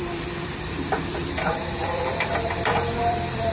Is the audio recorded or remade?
remade